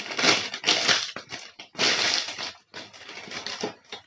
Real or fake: real